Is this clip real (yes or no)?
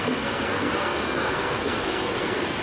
no